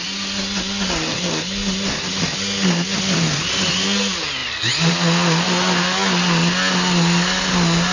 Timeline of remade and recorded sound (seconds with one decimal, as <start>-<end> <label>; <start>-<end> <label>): 0.0-7.9 recorded

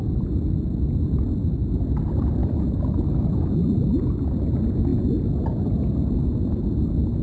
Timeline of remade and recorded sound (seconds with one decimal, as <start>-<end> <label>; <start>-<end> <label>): 0.0-2.4 recorded; 2.4-3.5 remade; 3.5-7.2 recorded